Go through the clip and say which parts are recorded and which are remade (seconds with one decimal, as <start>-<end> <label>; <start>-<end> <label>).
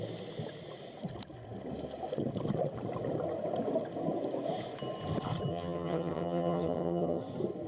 0.0-5.5 recorded; 5.5-7.2 remade; 7.2-7.7 recorded